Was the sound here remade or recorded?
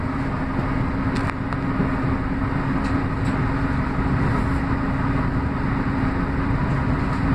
recorded